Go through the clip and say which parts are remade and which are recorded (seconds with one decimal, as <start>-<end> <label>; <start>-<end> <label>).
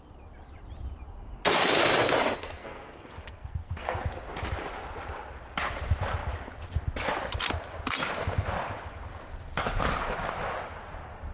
0.0-2.4 recorded; 2.4-4.0 remade; 4.0-11.3 recorded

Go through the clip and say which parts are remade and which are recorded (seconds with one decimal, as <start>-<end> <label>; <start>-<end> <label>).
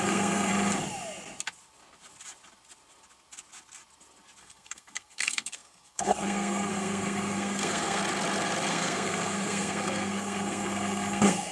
0.0-0.5 remade; 0.5-4.4 recorded; 4.4-8.0 remade; 8.0-8.7 recorded; 8.7-11.5 remade